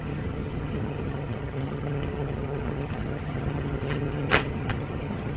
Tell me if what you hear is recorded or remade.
remade